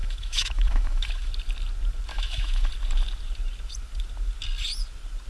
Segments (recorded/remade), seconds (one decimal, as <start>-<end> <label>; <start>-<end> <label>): 0.0-1.3 remade; 1.3-2.1 recorded; 2.1-2.7 remade; 2.7-5.3 recorded